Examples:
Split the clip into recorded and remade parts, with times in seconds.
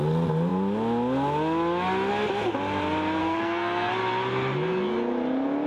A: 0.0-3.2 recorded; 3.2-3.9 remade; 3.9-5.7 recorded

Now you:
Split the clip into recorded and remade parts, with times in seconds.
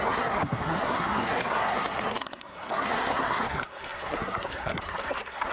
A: 0.0-5.5 remade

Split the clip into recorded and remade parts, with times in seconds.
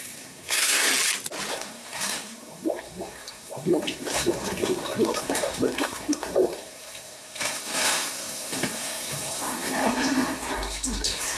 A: 0.0-0.9 remade; 0.9-1.5 recorded; 1.5-11.4 remade